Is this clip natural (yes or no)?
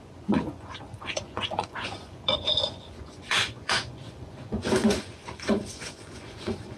no